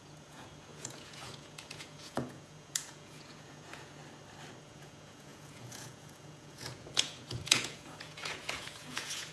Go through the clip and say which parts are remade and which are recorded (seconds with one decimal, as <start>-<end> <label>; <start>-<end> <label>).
0.0-4.0 remade; 4.0-4.6 recorded; 4.6-9.3 remade

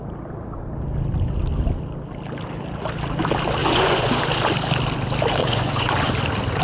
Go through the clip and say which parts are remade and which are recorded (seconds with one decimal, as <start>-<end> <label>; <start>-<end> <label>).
0.0-3.6 recorded; 3.6-4.2 remade; 4.2-5.4 recorded; 5.4-6.1 remade; 6.1-6.6 recorded